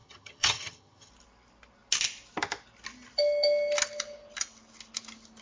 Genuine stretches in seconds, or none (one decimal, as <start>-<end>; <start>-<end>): 1.1-5.4